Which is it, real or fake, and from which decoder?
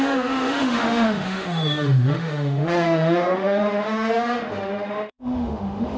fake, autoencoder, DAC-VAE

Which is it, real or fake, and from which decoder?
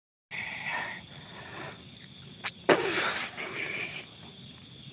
real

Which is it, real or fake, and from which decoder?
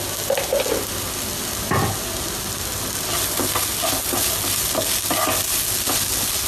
real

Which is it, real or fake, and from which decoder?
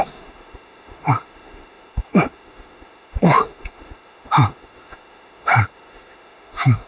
fake, autoencoder, DAC-VAE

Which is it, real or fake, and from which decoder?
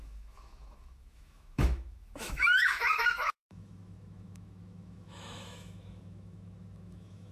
fake, autoencoder, DAC-VAE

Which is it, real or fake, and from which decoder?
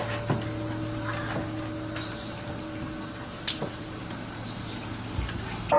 real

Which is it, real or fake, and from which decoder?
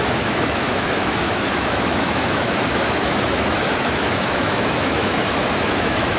fake, autoencoder, DAC-VAE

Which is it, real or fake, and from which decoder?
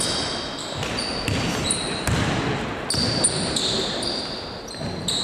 real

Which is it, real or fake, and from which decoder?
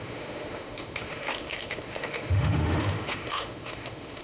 fake, autoencoder, DAC-VAE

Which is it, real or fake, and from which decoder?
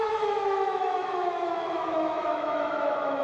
fake, autoencoder, DAC-VAE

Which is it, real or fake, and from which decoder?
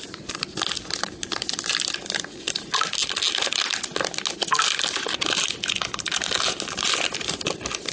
real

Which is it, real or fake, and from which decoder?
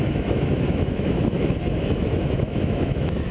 fake, autoencoder, DAC-VAE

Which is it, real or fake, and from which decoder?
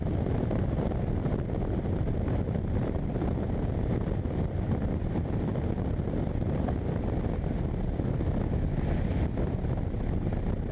real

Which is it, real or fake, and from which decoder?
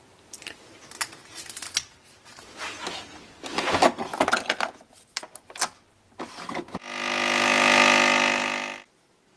real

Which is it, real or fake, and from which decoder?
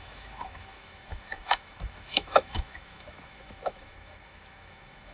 fake, autoencoder, DAC-VAE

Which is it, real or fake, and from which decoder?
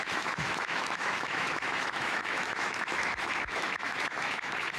fake, autoencoder, DAC-VAE